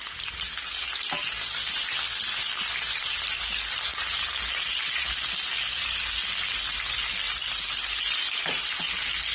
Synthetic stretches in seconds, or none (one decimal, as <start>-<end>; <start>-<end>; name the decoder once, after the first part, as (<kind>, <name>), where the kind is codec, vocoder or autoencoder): none